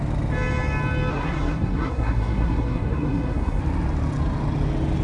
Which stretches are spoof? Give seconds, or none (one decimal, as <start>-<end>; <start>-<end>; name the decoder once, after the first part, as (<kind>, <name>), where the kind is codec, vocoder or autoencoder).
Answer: 1.1-3.6 (codec, SNAC)